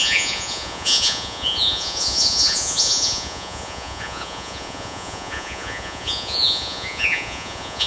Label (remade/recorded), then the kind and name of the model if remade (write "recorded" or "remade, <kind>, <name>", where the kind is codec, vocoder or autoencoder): remade, vocoder, Vocos